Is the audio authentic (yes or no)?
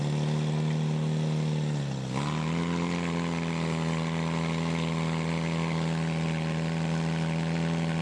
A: yes